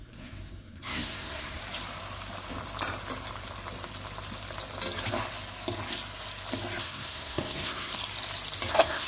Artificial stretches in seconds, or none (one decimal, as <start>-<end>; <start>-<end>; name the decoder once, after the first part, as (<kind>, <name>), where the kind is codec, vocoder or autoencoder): 0.0-1.6 (codec, SNAC); 6.8-7.9; 8.7-9.1